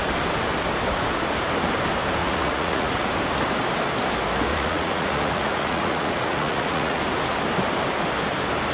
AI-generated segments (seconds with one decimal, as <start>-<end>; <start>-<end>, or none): 2.2-3.1; 4.5-7.0